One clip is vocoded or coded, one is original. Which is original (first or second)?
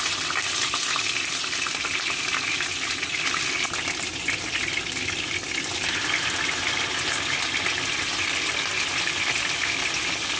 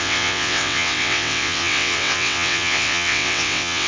first